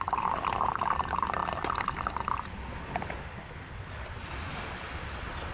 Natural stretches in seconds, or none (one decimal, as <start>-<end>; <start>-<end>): 0.0-5.5